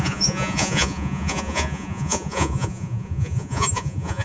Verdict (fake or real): fake